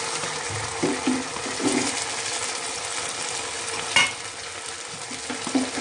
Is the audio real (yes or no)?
yes